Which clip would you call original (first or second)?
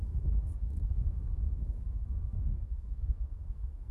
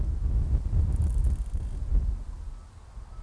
second